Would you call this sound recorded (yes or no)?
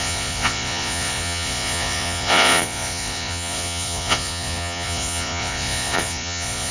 no